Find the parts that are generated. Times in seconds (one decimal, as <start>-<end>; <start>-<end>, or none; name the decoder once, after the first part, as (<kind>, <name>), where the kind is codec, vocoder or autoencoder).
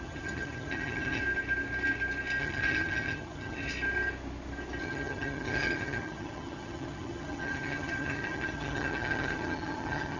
0.0-1.2 (vocoder, HiFi-GAN); 2.4-3.7; 4.8-10.2